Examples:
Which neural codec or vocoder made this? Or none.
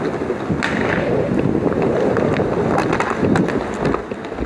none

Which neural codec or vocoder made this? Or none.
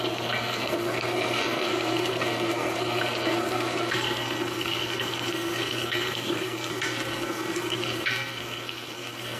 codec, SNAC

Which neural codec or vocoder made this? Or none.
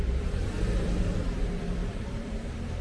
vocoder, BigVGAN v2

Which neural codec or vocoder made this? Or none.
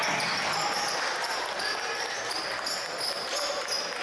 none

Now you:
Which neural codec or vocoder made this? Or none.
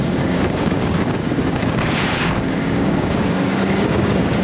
codec, DAC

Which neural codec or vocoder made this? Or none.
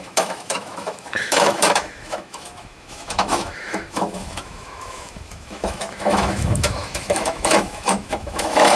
autoencoder, DAC-VAE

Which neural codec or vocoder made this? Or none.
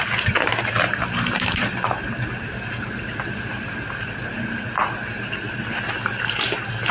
none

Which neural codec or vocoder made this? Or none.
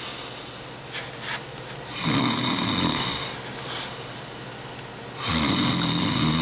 none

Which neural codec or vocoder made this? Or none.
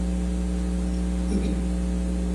none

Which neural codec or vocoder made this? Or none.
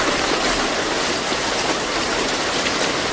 vocoder, BigVGAN v2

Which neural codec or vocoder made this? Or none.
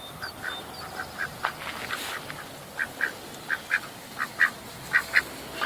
none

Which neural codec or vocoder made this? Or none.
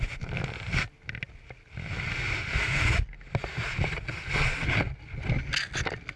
none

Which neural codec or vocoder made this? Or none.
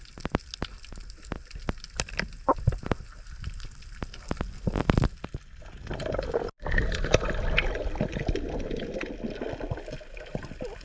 none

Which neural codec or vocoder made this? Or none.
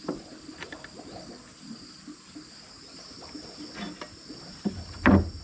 none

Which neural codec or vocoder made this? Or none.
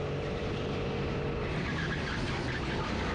none